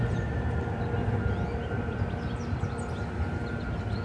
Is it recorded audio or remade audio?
recorded